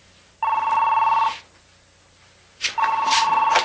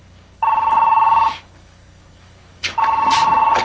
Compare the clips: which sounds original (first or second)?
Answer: first